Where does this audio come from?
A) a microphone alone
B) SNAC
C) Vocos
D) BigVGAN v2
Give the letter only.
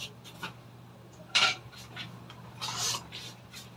D